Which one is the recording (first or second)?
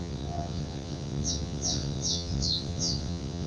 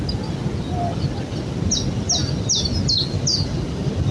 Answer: second